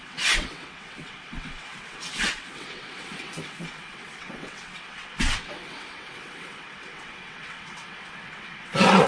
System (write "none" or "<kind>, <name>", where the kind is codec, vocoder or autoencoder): vocoder, WaveNeXt